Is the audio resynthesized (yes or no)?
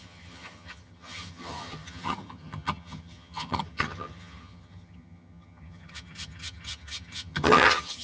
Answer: yes